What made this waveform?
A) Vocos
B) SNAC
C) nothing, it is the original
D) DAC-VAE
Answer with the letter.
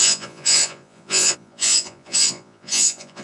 A